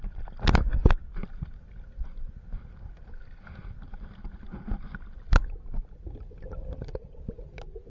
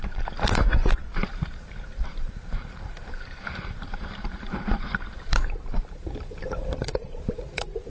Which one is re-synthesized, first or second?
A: second